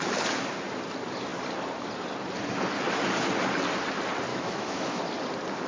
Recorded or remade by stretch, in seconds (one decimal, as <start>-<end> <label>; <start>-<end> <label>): 0.0-4.3 recorded; 4.3-5.0 remade; 5.0-5.7 recorded